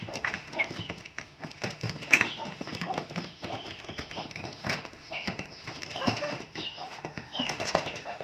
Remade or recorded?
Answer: remade